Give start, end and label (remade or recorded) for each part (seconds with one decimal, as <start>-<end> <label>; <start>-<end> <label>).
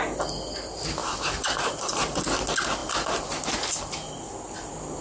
0.0-1.0 recorded; 1.0-2.2 remade; 2.2-5.0 recorded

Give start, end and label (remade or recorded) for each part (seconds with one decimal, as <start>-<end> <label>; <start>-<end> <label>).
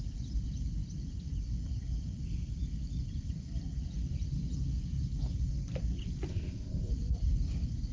0.0-6.3 recorded; 6.3-6.9 remade; 6.9-7.9 recorded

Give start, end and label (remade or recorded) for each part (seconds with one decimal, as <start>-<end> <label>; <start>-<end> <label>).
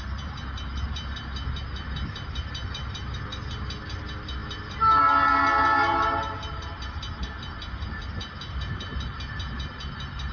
0.0-10.3 recorded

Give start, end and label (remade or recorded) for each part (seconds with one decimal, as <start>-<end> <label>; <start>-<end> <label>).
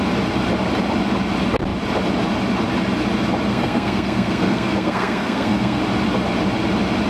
0.0-3.5 recorded; 3.5-5.8 remade; 5.8-7.1 recorded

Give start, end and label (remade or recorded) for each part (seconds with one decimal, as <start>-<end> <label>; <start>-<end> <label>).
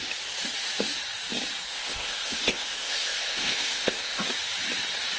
0.0-1.7 recorded; 1.7-4.2 remade; 4.2-5.2 recorded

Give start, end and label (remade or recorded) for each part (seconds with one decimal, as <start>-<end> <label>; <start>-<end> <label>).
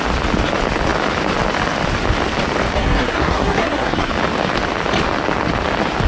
0.0-2.7 recorded; 2.7-4.1 remade; 4.1-6.1 recorded